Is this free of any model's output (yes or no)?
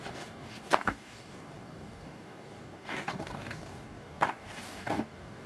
no